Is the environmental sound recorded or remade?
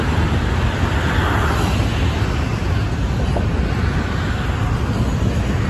recorded